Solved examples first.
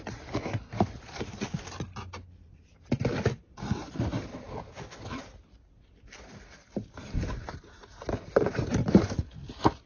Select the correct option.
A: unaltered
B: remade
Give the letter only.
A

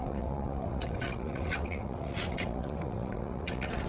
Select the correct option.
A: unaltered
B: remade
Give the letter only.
B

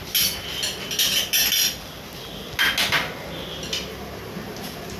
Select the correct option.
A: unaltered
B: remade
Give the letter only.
A